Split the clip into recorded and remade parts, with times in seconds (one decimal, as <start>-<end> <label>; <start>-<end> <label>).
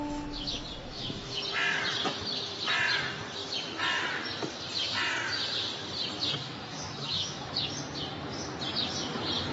0.0-0.8 recorded; 0.8-1.4 remade; 1.4-6.4 recorded; 6.4-7.5 remade; 7.5-9.5 recorded